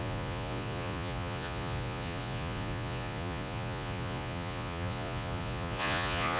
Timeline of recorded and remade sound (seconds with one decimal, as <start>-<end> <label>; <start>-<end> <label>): 0.0-6.4 remade